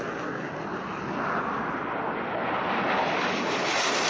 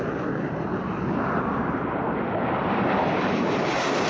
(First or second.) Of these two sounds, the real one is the first